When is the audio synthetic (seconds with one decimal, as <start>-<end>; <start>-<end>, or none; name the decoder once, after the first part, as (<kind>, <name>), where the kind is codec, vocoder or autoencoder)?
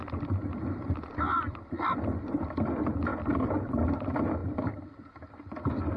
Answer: 3.1-3.6 (vocoder, BigVGAN v2); 4.4-5.0